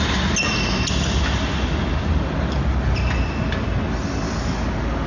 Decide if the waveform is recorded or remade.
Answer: recorded